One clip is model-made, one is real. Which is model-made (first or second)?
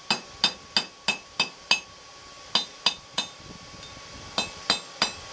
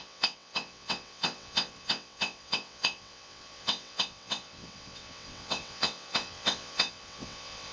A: second